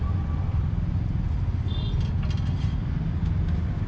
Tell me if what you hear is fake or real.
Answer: real